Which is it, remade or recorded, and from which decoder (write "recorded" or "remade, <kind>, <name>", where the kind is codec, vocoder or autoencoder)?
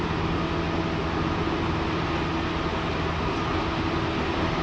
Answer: recorded